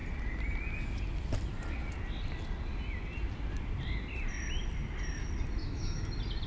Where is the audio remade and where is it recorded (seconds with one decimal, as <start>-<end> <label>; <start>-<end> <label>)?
0.0-5.6 recorded; 5.6-6.1 remade; 6.1-6.5 recorded